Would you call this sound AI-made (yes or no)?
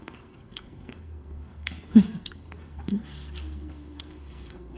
yes